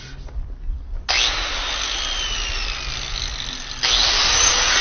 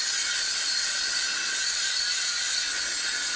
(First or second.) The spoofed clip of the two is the second